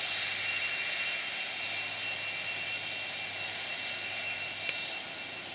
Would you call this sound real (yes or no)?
yes